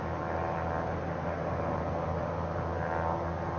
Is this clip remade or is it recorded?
recorded